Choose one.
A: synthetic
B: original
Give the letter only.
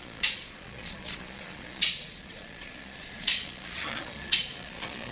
A